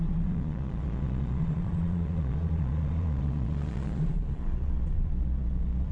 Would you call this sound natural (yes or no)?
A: no